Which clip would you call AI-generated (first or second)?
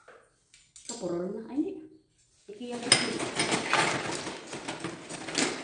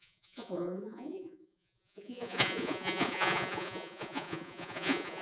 second